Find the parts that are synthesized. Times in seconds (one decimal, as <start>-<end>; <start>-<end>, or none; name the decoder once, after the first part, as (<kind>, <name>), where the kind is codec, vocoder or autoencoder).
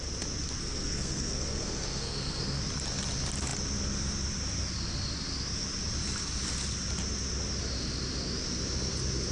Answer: 0.6-2.6 (codec, SNAC)